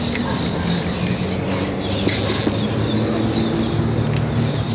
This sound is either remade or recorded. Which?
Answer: recorded